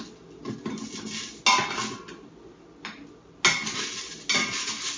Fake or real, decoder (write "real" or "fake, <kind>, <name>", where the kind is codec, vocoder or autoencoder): real